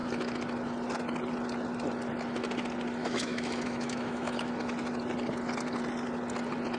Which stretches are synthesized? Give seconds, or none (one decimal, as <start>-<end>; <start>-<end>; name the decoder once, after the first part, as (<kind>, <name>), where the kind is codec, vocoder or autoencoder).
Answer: 3.0-4.5 (autoencoder, DAC-VAE)

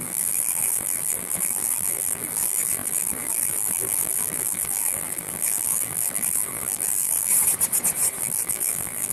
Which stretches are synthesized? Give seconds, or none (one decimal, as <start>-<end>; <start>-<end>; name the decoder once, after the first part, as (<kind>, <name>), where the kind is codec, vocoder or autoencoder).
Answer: 0.0-7.3 (vocoder, BigVGAN v2); 8.2-9.1

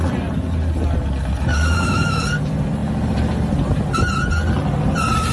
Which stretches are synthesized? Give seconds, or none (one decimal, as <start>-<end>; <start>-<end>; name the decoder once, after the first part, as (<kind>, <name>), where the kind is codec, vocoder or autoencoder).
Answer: 1.5-2.2 (autoencoder, DAC-VAE)

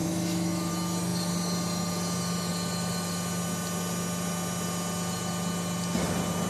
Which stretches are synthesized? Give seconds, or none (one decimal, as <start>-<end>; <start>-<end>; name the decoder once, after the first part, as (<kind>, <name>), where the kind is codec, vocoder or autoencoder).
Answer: 0.0-0.7 (autoencoder, DAC-VAE)